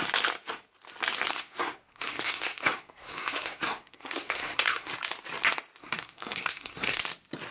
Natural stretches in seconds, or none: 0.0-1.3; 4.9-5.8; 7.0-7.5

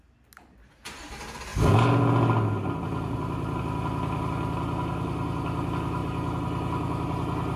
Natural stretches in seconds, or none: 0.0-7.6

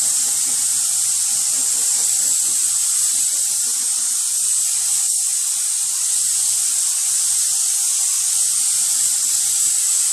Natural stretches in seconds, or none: 0.0-10.1

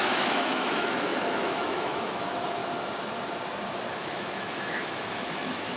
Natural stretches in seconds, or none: 2.6-3.9